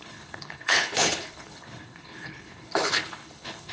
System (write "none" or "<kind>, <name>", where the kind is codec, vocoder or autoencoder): codec, HILCodec